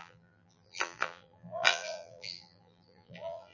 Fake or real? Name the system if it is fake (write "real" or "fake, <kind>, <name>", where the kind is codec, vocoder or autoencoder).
fake, vocoder, BigVGAN v2